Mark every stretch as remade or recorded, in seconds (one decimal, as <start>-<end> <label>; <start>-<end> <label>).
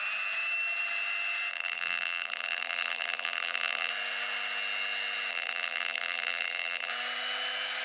0.0-1.5 recorded; 1.5-3.9 remade; 3.9-5.3 recorded; 5.3-6.9 remade; 6.9-7.8 recorded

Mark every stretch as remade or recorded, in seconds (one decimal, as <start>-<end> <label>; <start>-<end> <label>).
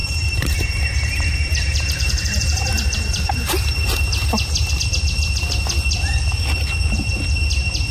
0.0-4.7 remade; 4.7-7.9 recorded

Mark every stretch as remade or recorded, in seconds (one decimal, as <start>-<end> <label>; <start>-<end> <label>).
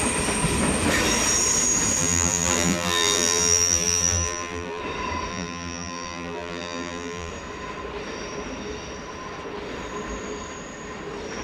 0.0-2.0 recorded; 2.0-4.8 remade; 4.8-5.3 recorded; 5.3-7.3 remade; 7.3-11.4 recorded